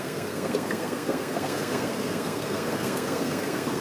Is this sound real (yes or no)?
no